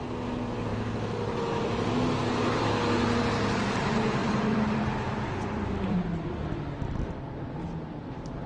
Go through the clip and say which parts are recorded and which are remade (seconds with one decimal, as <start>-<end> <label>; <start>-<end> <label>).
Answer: 0.0-4.2 recorded; 4.2-6.3 remade; 6.3-8.5 recorded